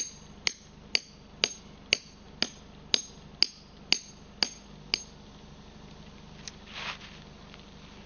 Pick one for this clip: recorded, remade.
recorded